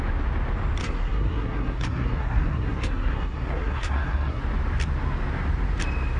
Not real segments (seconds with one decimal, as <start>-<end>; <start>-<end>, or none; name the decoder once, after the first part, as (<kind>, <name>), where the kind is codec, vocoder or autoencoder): 0.8-4.4 (codec, SNAC)